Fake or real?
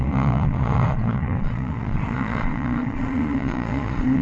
fake